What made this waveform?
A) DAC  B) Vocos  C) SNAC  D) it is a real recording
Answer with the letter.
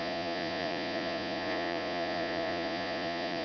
B